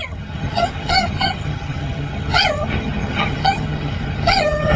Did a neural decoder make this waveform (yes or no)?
yes